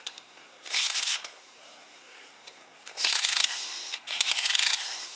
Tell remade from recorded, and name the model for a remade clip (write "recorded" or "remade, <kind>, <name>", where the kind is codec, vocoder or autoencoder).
remade, codec, SNAC